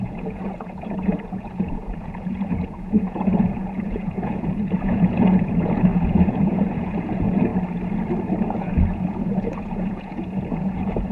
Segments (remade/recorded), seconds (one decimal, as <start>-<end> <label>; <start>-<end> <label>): 0.0-7.5 remade; 7.5-8.4 recorded; 8.4-11.1 remade